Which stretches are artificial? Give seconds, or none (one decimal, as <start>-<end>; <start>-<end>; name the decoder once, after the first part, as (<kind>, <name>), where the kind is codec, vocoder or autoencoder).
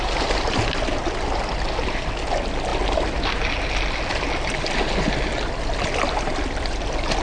none